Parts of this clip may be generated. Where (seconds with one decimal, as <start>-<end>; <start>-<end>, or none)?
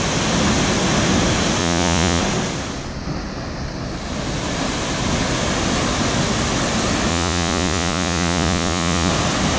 1.6-2.2; 7.1-9.1